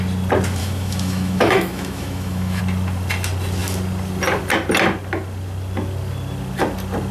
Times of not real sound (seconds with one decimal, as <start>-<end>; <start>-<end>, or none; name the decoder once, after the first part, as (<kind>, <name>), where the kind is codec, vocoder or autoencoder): 0.6-2.6 (autoencoder, DAC-VAE)